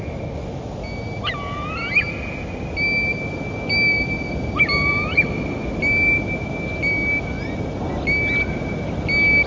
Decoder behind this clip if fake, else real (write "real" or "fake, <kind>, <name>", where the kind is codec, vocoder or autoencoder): real